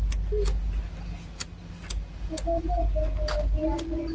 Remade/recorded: recorded